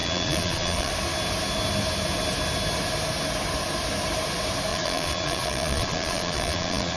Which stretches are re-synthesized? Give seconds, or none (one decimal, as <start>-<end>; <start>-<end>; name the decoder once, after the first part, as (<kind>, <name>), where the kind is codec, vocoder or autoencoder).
0.0-0.9 (vocoder, Vocos); 4.7-7.0